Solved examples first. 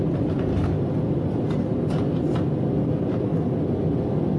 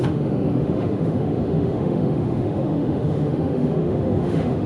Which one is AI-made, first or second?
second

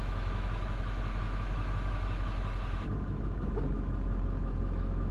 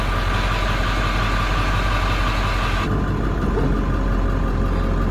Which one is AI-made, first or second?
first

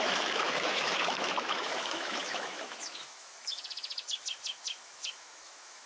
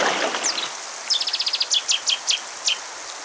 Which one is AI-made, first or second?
first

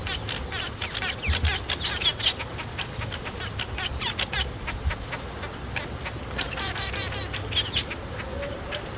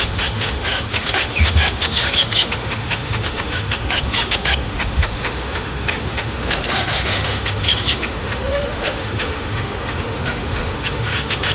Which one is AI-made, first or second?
second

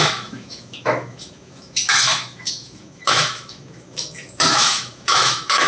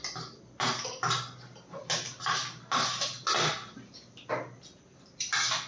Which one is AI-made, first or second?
first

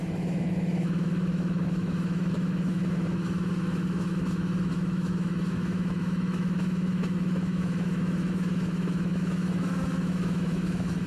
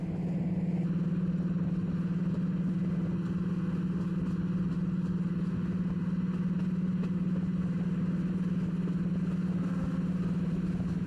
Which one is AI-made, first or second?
first